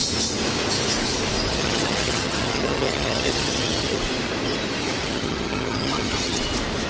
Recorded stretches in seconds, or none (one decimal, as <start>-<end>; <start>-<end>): 0.0-1.5; 4.0-5.0; 6.4-6.9